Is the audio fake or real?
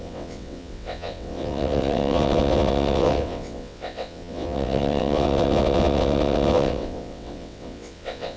fake